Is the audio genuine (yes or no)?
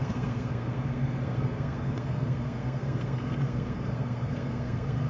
no